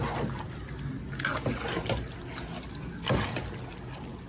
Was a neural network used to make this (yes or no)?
no